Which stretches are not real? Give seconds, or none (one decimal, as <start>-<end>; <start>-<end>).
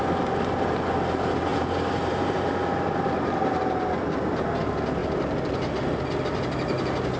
1.5-2.5